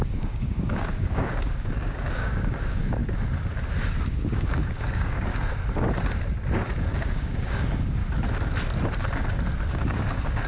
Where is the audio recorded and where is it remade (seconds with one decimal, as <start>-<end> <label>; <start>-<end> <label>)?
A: 0.0-3.0 remade; 3.0-4.1 recorded; 4.1-5.3 remade; 5.3-6.8 recorded; 6.8-8.0 remade; 8.0-9.7 recorded; 9.7-10.5 remade